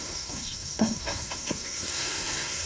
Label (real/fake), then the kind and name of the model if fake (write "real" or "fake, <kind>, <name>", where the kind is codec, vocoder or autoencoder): fake, codec, SNAC